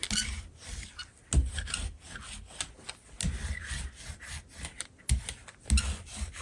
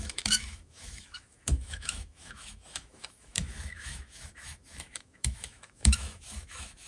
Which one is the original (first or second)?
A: first